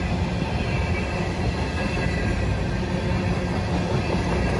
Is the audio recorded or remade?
recorded